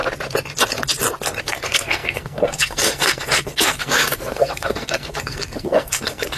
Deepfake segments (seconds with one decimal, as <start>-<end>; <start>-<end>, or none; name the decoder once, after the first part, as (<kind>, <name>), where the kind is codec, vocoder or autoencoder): 1.4-6.4 (codec, SNAC)